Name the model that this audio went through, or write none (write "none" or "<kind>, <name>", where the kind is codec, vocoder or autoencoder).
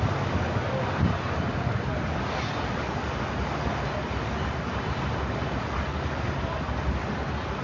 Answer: none